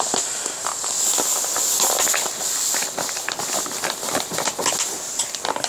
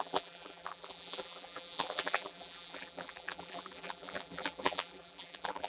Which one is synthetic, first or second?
second